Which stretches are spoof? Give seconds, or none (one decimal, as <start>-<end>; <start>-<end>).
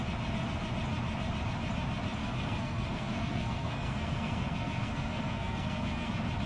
2.2-6.1